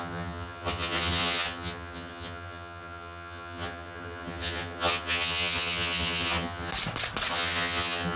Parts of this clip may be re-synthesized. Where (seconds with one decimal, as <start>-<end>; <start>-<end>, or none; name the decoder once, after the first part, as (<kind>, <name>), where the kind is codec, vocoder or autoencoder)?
0.0-6.7 (vocoder, HiFi-GAN); 7.3-8.2